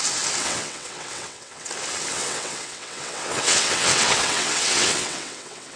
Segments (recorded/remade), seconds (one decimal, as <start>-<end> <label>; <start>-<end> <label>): 0.0-0.4 recorded; 0.4-1.7 remade; 1.7-2.1 recorded; 2.1-5.8 remade